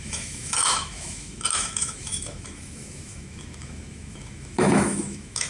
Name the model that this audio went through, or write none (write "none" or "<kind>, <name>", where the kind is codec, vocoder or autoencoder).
autoencoder, DAC-VAE